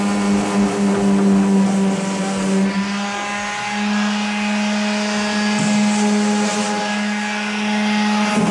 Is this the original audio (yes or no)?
yes